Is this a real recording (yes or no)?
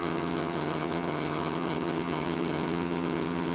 no